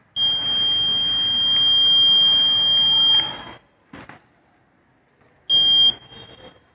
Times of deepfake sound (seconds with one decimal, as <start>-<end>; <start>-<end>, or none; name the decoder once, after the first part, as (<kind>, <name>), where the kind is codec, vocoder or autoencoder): none